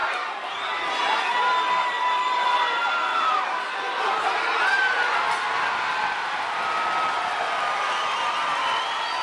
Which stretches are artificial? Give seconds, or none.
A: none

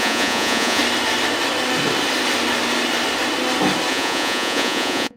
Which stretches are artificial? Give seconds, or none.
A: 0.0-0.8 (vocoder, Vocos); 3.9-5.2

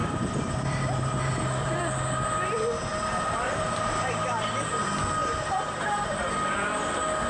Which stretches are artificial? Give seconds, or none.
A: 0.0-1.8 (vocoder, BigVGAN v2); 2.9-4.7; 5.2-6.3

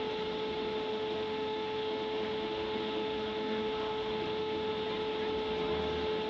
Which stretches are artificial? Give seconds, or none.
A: 0.9-4.7 (autoencoder, DAC-VAE)

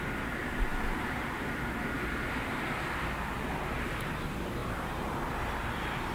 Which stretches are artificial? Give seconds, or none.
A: 4.6-5.3 (vocoder, BigVGAN v2)